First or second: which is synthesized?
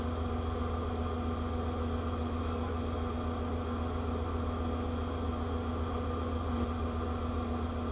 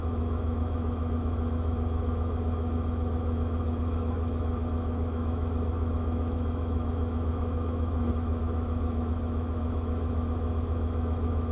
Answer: second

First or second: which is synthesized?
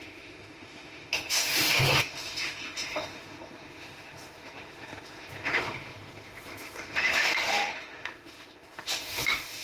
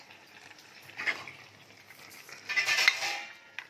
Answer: first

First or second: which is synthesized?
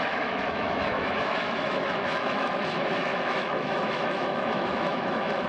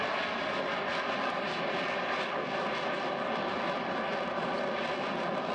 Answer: first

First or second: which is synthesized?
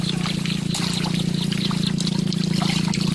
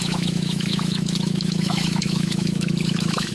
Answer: second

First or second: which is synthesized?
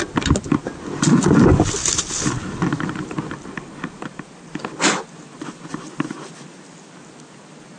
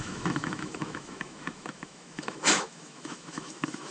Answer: second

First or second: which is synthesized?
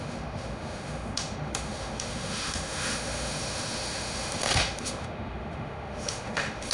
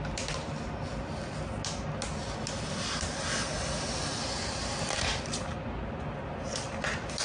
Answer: first